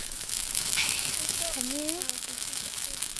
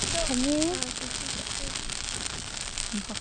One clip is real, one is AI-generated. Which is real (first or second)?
second